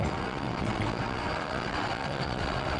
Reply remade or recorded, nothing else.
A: remade